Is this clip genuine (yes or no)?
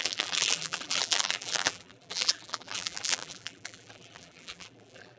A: no